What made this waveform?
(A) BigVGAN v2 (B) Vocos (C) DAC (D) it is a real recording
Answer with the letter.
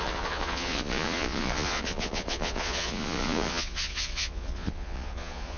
B